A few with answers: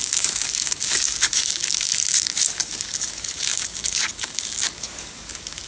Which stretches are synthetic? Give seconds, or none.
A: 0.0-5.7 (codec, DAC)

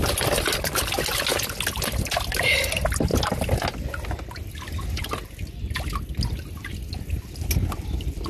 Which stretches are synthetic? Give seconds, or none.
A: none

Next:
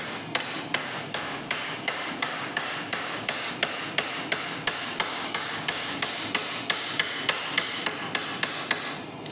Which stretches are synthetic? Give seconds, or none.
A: 0.8-3.5 (codec, DAC); 5.1-6.1

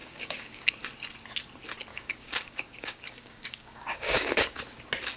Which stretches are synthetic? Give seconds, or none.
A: 0.0-0.7 (codec, DAC); 1.9-4.6

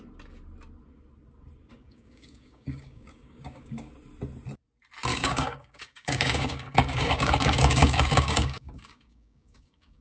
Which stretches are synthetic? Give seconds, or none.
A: 1.7-3.9 (codec, DAC); 5.1-10.0